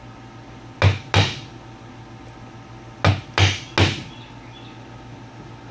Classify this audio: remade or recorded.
recorded